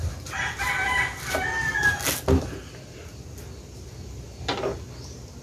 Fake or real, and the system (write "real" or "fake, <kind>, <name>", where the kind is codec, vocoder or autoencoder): real